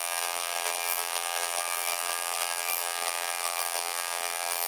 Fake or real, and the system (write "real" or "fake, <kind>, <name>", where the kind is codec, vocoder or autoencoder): fake, vocoder, BigVGAN v2